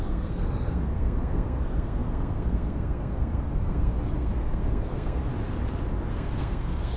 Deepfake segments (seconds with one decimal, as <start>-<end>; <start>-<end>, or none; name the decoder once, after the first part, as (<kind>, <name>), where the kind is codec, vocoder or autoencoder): 0.0-5.2 (codec, SNAC); 6.1-7.0